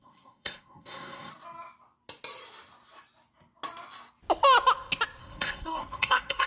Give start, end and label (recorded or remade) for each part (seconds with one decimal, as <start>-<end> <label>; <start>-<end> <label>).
0.0-1.3 remade; 1.3-5.2 recorded; 5.2-6.5 remade